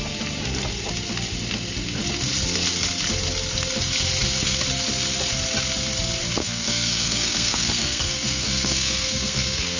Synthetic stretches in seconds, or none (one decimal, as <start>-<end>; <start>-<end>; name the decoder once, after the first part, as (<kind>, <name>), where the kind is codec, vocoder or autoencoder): 6.4-9.8 (codec, SNAC)